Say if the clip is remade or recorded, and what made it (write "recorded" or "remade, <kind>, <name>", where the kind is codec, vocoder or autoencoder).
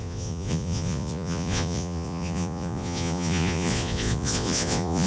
remade, vocoder, Vocos